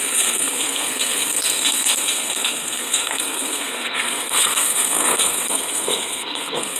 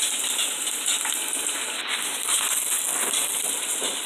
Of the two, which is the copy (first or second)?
first